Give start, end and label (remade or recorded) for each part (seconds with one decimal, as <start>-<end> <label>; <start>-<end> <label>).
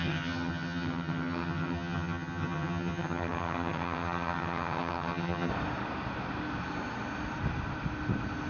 0.0-5.5 remade; 5.5-8.5 recorded